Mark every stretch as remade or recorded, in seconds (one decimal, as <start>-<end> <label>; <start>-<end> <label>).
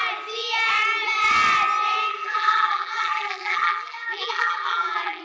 0.0-2.1 recorded; 2.1-5.2 remade